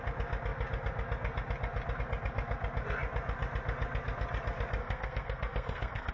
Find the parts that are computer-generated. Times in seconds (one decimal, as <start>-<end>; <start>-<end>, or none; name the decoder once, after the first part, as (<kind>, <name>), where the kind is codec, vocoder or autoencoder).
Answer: 4.8-6.1 (codec, SNAC)